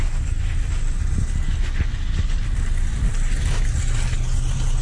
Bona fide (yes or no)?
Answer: yes